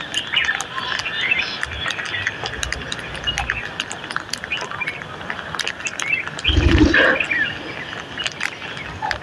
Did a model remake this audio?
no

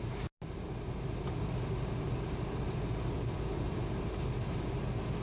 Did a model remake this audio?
no